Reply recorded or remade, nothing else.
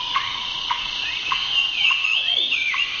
remade